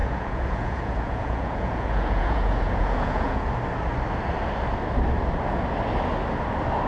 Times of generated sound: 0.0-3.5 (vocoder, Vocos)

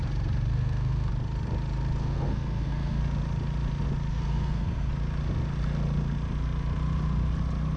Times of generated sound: 0.5-1.1 (codec, SNAC); 2.0-3.0; 4.1-4.9

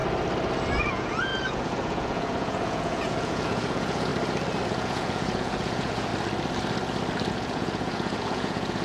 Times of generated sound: 0.8-4.1 (vocoder, Vocos); 4.7-6.1; 7.3-8.8

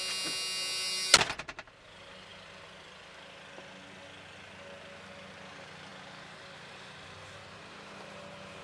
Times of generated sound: none

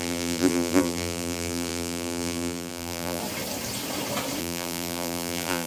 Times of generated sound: 0.0-3.2 (vocoder, BigVGAN v2); 4.4-5.7